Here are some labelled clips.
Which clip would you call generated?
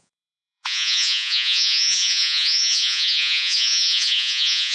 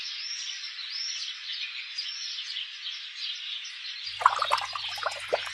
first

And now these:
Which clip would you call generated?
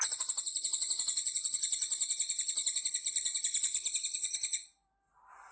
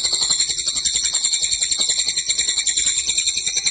second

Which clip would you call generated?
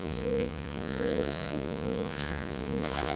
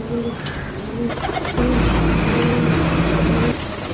first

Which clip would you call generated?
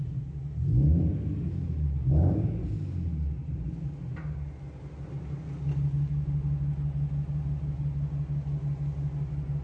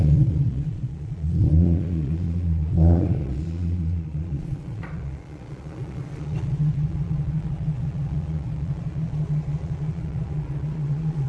second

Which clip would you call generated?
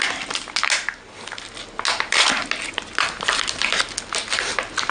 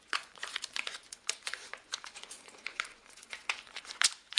second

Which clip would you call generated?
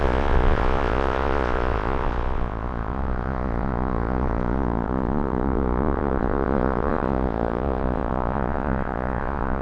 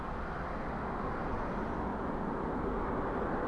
first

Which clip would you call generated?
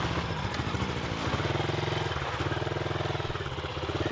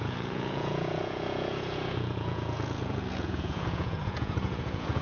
second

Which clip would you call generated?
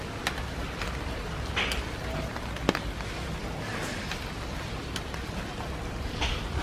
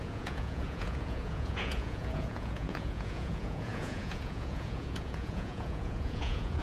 second